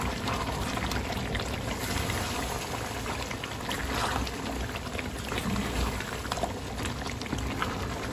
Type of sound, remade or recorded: recorded